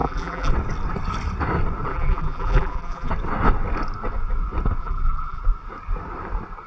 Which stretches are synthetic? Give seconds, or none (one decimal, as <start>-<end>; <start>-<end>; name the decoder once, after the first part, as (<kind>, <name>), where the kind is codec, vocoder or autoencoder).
0.0-0.5 (vocoder, BigVGAN v2); 1.9-3.1; 4.8-5.4